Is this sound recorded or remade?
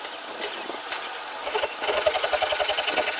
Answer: recorded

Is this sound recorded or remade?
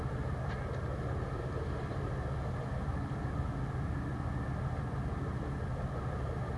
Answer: recorded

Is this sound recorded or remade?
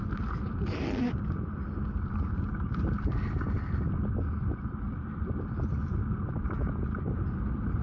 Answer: recorded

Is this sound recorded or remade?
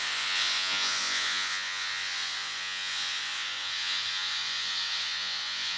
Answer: remade